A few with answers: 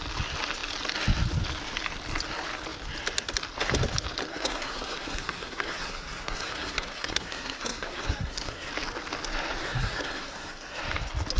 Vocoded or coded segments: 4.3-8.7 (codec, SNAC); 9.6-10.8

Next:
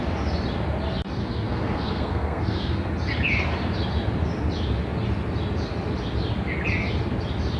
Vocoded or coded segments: 1.2-2.9 (codec, SNAC)

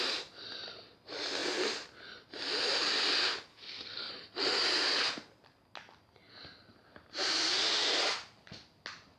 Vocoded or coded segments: 3.5-4.1 (codec, SNAC)